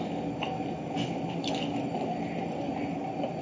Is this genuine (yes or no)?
yes